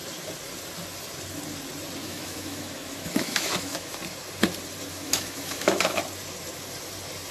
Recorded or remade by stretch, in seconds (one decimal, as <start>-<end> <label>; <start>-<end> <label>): 0.0-2.0 recorded; 2.0-4.0 remade; 4.0-4.9 recorded; 4.9-6.0 remade; 6.0-7.3 recorded